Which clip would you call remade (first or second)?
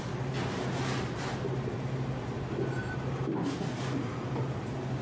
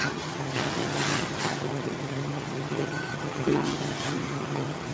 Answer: second